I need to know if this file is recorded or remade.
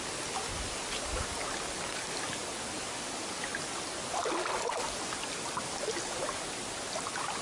recorded